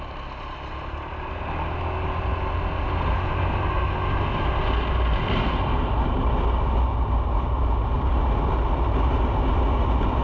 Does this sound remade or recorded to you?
recorded